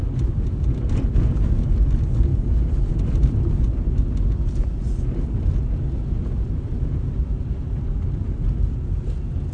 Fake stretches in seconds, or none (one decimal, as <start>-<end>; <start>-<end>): none